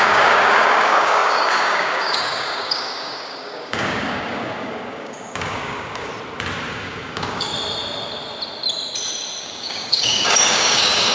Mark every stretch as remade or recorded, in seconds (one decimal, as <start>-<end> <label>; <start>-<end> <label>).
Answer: 0.0-6.1 remade; 6.1-6.7 recorded; 6.7-7.5 remade; 7.5-9.4 recorded; 9.4-11.1 remade